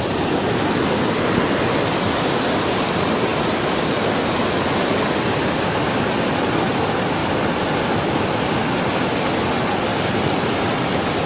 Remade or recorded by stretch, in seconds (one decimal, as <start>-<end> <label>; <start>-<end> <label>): 0.0-3.3 recorded; 3.3-4.0 remade; 4.0-7.2 recorded; 7.2-7.8 remade; 7.8-9.9 recorded; 9.9-10.8 remade; 10.8-11.3 recorded